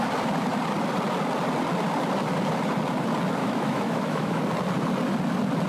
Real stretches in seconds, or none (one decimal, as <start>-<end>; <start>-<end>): 0.0-3.4; 4.4-5.7